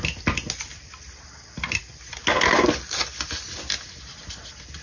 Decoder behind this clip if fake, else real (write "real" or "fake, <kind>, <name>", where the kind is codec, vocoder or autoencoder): real